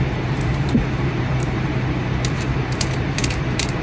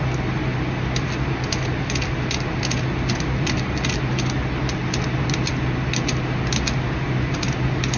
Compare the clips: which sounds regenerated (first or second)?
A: first